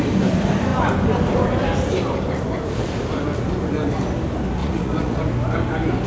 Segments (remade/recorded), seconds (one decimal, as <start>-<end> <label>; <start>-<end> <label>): 0.0-4.6 recorded; 4.6-5.2 remade; 5.2-6.1 recorded